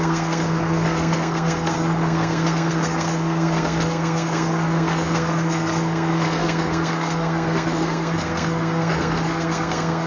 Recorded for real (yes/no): no